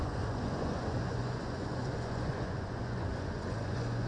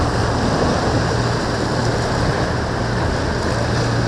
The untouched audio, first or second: second